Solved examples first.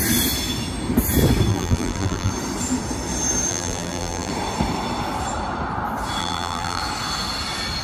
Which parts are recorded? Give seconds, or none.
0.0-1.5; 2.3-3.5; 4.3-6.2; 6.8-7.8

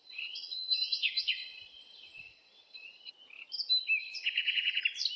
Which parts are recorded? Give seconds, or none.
3.1-4.0; 4.8-5.2

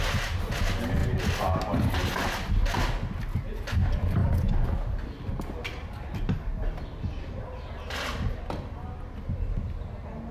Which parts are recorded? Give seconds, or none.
0.0-10.3

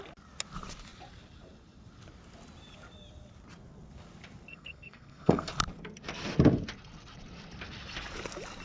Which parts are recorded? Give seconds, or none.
0.0-4.5; 5.5-8.6

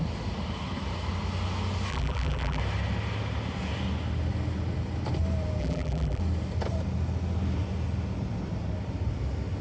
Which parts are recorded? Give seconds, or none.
0.0-1.9; 2.6-5.6; 6.2-9.6